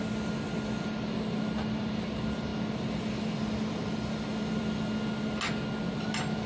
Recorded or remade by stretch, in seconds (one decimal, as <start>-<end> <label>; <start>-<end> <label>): 0.0-6.5 recorded